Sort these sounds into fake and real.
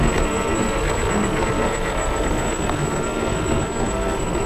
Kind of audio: fake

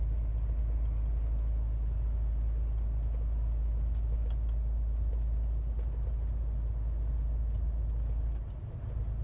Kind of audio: real